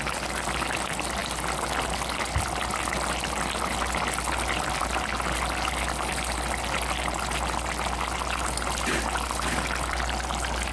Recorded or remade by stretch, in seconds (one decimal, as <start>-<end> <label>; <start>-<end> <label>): 0.0-10.7 recorded